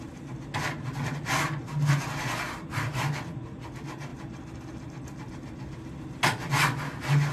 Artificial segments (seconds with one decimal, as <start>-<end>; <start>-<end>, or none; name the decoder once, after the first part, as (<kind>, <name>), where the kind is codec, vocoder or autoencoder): none